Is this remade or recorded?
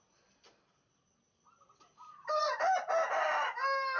recorded